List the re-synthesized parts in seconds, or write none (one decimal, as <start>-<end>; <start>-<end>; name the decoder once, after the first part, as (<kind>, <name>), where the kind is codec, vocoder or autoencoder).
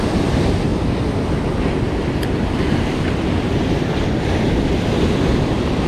none